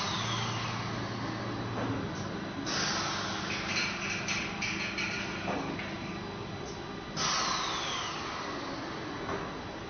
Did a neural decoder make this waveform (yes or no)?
no